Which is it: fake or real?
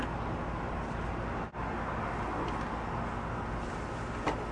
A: real